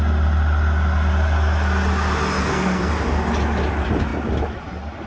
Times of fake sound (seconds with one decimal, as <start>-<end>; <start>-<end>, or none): 2.4-2.9